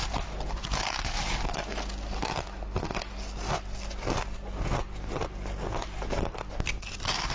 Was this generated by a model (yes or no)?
no